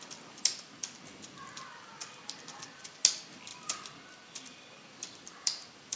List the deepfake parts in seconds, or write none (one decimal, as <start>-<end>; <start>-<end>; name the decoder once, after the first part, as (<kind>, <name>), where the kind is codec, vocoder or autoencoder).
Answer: none